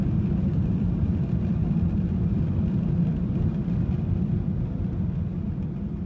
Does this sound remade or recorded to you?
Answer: recorded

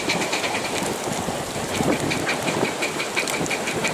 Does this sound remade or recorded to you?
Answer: remade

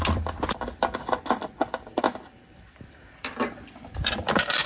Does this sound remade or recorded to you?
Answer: remade